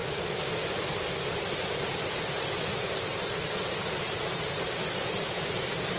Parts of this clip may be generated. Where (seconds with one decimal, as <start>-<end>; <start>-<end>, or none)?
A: 0.0-6.0